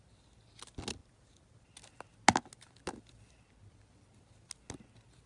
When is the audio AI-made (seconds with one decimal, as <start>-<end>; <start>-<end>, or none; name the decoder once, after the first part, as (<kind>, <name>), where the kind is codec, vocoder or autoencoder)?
none